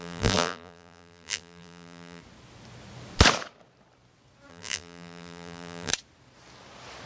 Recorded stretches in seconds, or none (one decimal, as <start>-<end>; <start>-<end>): 2.2-4.5; 5.9-7.1